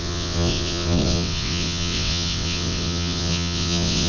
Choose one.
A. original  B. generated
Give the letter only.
B